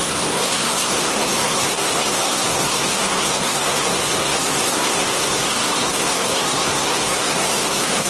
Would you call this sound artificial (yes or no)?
yes